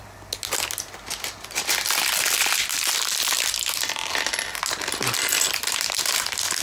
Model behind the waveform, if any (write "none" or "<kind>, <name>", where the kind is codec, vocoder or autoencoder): none